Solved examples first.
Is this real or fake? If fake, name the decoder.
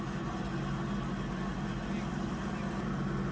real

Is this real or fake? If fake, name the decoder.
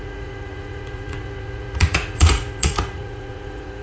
fake, vocoder, Vocos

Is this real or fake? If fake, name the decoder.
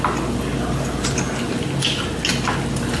real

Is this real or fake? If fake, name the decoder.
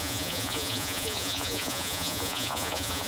fake, vocoder, Vocos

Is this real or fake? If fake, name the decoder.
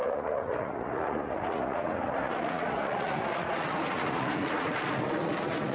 fake, vocoder, Vocos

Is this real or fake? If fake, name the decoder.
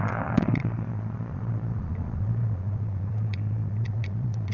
fake, vocoder, Vocos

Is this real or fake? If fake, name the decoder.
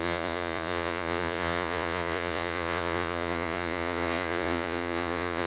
fake, vocoder, Vocos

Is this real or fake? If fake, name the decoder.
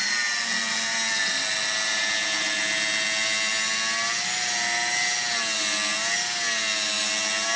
real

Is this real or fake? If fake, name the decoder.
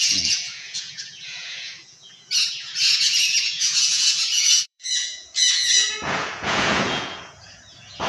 fake, vocoder, Vocos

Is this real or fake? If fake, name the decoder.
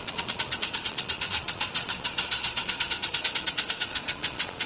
fake, vocoder, Vocos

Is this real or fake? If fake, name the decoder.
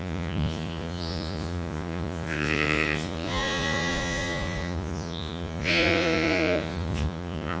fake, vocoder, Vocos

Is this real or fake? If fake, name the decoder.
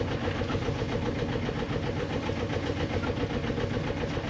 real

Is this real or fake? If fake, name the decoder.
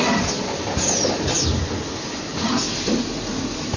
real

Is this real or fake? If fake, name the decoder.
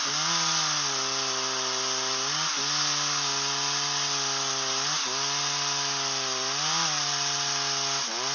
real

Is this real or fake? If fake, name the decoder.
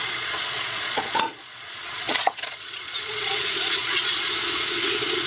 fake, vocoder, Vocos